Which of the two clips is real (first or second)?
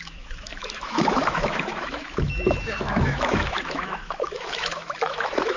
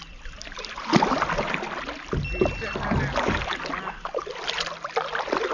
second